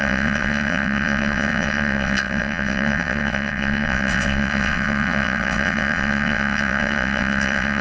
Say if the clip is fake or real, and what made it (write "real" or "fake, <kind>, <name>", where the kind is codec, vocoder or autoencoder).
fake, vocoder, WaveNeXt